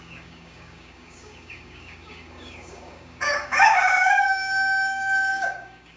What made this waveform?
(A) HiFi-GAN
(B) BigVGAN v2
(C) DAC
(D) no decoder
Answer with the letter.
C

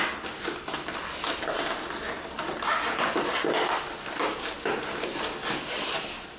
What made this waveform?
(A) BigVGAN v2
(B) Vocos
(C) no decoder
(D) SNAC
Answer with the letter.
C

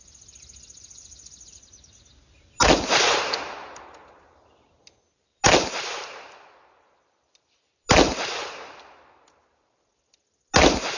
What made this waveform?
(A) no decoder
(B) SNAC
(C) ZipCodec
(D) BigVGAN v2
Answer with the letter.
A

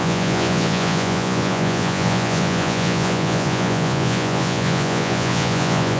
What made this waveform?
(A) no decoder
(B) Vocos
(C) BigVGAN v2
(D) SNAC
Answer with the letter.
B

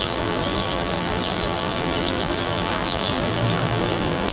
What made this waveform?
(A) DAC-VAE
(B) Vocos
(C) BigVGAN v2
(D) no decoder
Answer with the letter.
C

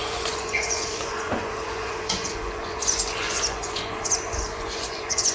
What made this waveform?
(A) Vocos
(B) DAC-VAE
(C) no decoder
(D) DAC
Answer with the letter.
A